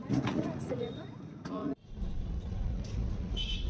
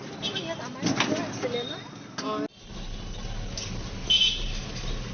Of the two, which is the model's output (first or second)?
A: first